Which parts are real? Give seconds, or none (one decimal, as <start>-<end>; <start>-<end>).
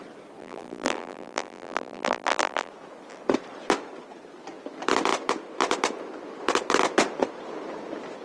0.0-0.4; 2.7-8.2